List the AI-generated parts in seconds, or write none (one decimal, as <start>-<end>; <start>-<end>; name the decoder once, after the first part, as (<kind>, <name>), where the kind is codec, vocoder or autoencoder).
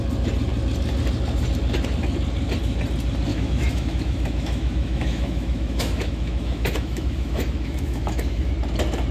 3.3-8.5 (autoencoder, DAC-VAE)